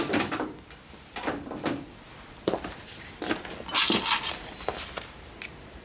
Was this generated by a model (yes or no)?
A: no